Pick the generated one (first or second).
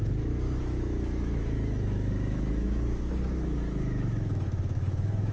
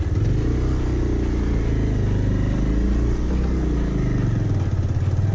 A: first